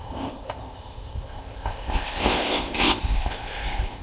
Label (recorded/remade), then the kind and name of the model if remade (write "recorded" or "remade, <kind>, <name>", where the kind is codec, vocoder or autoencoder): remade, codec, ZipCodec